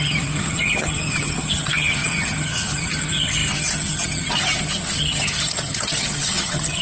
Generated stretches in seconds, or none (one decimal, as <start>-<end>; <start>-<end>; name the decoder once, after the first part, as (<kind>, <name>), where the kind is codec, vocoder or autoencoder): 0.0-6.8 (vocoder, HiFi-GAN)